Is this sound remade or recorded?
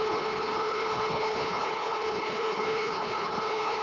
remade